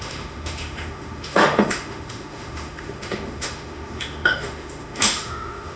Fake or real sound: fake